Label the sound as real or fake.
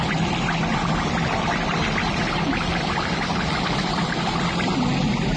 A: real